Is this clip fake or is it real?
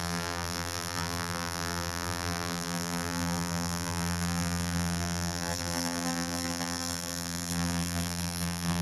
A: fake